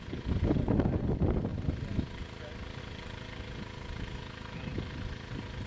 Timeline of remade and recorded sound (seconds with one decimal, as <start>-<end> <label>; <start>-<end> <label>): 0.0-5.7 recorded